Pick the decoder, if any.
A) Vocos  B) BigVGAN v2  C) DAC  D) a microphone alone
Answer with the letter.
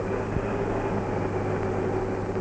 D